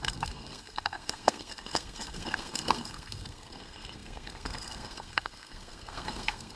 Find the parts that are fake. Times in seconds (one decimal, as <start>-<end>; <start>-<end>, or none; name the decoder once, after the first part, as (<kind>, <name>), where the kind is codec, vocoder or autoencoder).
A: 0.0-6.6 (codec, SNAC)